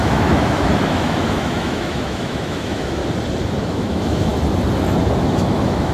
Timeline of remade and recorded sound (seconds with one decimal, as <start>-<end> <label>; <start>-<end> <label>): 0.0-3.0 remade; 3.0-3.6 recorded; 3.6-4.3 remade; 4.3-5.2 recorded; 5.2-5.9 remade